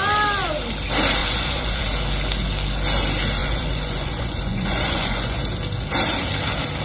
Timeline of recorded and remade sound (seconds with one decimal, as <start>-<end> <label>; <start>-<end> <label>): 0.0-1.2 recorded; 1.2-1.8 remade; 1.8-3.4 recorded; 3.4-5.4 remade; 5.4-6.8 recorded